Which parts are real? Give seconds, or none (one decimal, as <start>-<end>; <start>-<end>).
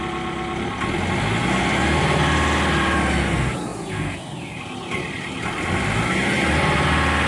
0.0-7.3